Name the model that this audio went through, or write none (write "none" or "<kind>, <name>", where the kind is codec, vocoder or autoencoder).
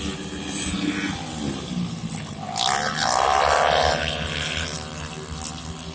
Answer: none